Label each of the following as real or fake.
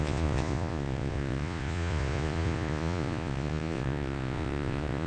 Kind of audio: fake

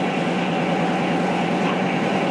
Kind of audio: fake